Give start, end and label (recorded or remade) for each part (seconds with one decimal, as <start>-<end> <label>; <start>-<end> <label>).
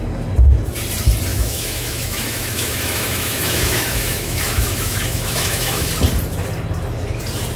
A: 0.0-1.3 recorded; 1.3-5.9 remade; 5.9-7.6 recorded